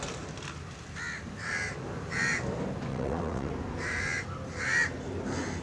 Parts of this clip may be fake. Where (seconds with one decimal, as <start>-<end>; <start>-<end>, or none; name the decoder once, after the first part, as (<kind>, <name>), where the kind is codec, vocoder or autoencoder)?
2.9-3.5 (vocoder, WaveNeXt)